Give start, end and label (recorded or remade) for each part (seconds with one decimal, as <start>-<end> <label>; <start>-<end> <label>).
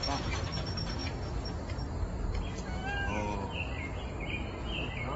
0.0-5.2 recorded